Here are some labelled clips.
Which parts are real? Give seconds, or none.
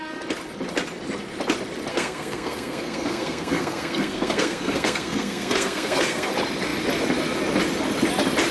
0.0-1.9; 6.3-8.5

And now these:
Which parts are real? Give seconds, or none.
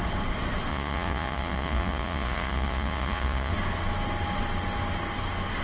0.0-0.7; 3.5-5.6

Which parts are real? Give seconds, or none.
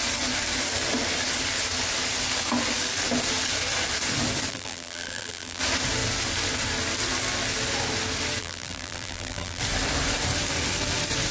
0.0-4.5; 5.6-8.4; 9.6-11.3